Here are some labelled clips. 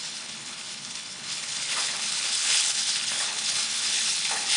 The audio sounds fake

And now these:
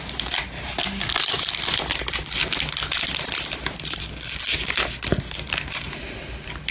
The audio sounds real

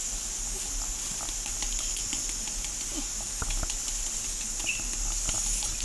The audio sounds real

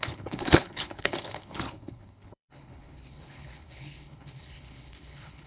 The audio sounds fake